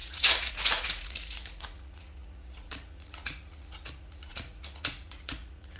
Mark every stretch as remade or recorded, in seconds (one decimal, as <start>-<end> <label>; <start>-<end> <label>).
0.0-5.8 remade